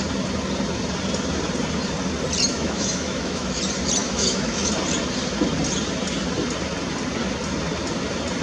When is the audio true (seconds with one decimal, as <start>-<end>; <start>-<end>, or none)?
0.0-2.5; 3.6-4.0; 4.7-8.4